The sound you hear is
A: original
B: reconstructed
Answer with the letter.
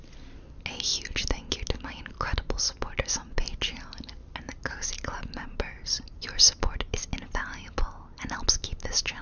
A